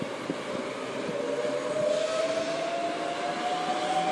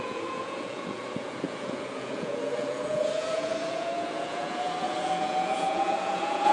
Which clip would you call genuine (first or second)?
first